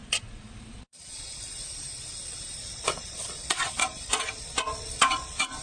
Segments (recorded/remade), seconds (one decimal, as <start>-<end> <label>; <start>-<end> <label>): 0.0-1.4 remade; 1.4-2.6 recorded; 2.6-5.6 remade